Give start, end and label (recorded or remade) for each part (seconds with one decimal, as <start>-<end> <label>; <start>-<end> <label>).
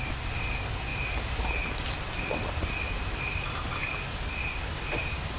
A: 0.0-5.4 recorded